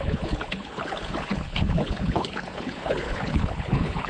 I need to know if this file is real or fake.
fake